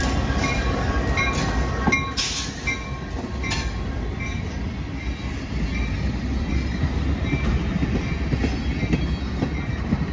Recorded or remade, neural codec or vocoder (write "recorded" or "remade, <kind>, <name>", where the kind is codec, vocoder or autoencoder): recorded